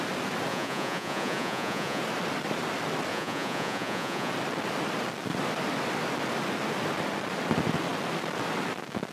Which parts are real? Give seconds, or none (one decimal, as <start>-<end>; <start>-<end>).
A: 0.0-0.5; 2.0-3.1; 4.3-9.1